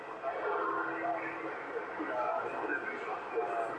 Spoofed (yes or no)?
no